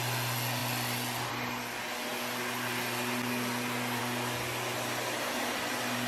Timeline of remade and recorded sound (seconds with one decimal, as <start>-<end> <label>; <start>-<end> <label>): 0.0-6.1 recorded